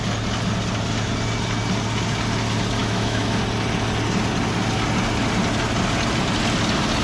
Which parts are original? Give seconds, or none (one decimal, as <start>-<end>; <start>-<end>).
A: 0.0-2.8; 3.4-7.0